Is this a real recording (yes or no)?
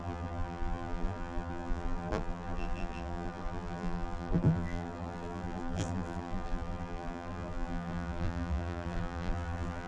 no